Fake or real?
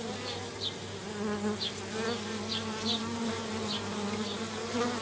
real